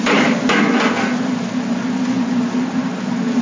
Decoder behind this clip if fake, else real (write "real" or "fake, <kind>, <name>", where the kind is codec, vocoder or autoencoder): real